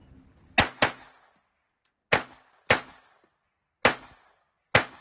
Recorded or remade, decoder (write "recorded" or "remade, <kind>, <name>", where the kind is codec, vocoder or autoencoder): recorded